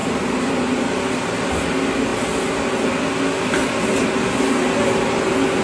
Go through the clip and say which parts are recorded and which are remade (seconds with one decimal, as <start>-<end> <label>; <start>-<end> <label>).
0.0-5.6 recorded